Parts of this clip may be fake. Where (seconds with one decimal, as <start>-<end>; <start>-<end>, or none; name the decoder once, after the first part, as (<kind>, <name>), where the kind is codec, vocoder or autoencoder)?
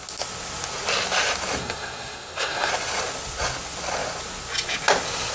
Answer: 1.6-2.7 (codec, SNAC)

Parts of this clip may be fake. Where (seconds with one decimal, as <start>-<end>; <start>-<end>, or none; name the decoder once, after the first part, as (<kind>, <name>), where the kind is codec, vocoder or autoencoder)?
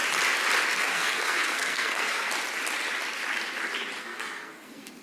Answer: 0.7-2.3 (codec, SNAC); 4.0-5.0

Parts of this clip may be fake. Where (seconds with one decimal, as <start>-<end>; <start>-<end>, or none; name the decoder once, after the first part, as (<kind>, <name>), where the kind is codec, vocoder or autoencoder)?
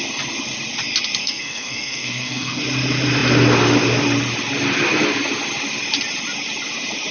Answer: 1.2-2.6 (codec, SNAC)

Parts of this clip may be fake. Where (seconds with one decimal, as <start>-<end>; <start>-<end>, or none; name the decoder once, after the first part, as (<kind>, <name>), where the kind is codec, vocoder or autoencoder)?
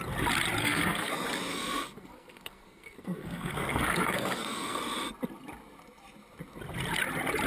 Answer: 0.6-1.1 (codec, SNAC); 1.5-4.8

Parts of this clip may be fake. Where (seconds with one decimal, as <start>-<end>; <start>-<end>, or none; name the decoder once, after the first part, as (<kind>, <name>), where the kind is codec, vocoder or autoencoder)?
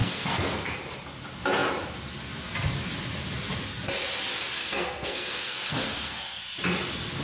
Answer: 0.0-0.8 (codec, SNAC); 4.6-6.4